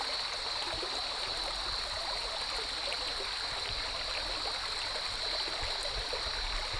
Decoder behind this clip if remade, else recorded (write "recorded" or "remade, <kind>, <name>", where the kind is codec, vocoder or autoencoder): recorded